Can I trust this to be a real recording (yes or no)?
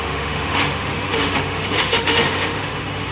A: no